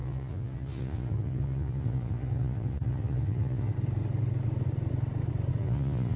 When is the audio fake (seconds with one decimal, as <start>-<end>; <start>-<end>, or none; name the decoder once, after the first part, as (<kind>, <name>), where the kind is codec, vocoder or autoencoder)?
0.0-3.7 (vocoder, Vocos); 5.6-6.2